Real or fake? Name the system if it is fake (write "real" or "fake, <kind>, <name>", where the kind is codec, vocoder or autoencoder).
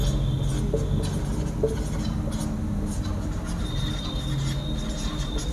real